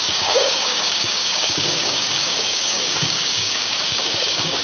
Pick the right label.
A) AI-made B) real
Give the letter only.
A